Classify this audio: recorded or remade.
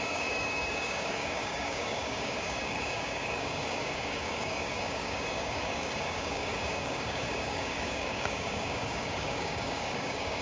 remade